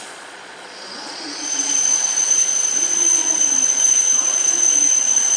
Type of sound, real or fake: fake